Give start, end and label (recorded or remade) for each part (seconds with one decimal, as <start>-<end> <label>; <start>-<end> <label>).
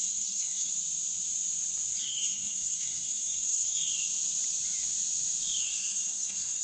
0.0-0.7 remade; 0.7-2.0 recorded; 2.0-3.9 remade; 3.9-5.6 recorded; 5.6-6.6 remade